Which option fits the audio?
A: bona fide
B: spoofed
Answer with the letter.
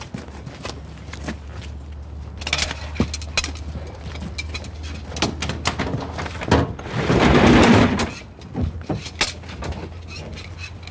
A